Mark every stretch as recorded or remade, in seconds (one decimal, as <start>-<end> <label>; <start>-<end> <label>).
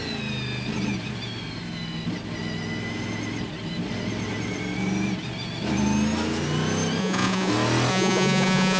0.0-7.0 recorded; 7.0-7.5 remade; 7.5-7.9 recorded; 7.9-8.8 remade